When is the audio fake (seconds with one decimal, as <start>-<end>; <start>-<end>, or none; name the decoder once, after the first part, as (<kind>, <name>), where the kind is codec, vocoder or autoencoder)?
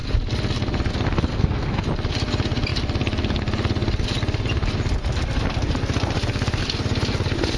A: 1.3-1.8 (codec, SNAC)